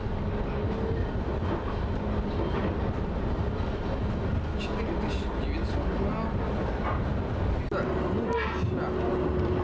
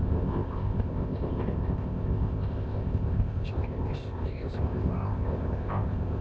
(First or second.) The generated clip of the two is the second